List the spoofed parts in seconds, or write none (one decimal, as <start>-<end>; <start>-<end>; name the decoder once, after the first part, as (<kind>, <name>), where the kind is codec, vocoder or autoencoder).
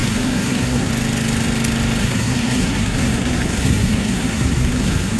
0.0-0.9 (codec, SNAC); 2.0-5.2